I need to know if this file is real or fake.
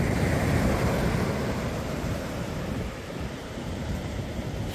fake